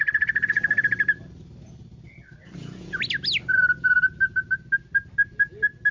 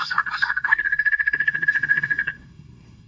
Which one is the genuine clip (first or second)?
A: first